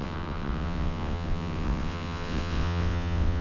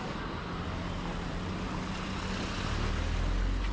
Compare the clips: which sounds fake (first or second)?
first